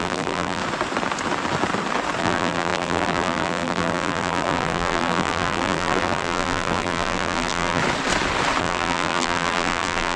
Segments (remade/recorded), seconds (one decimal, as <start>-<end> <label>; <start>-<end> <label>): 0.0-0.6 remade; 0.6-2.2 recorded; 2.2-7.8 remade; 7.8-8.6 recorded; 8.6-10.2 remade